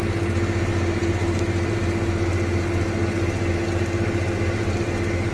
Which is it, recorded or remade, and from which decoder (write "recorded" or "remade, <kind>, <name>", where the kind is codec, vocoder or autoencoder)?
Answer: recorded